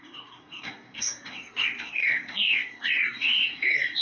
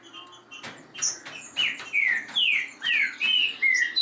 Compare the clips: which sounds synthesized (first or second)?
first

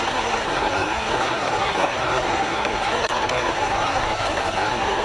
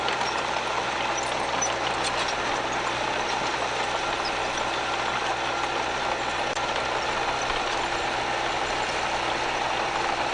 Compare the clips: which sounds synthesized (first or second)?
first